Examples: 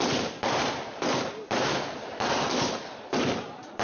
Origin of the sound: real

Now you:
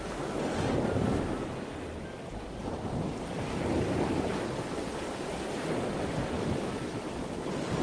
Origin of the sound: real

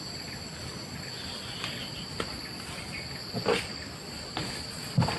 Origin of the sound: real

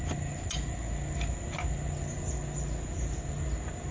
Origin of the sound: real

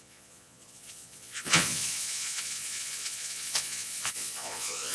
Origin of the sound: fake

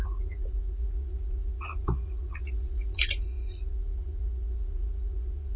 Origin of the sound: fake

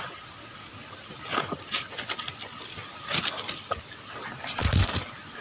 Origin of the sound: real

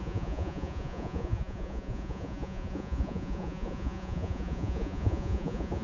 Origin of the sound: fake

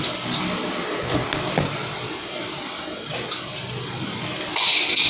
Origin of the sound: real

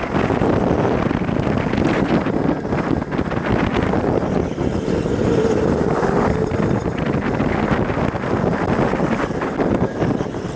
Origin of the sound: real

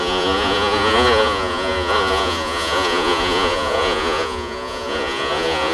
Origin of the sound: fake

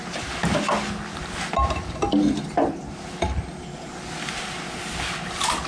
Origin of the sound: real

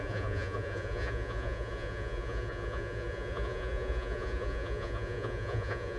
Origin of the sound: fake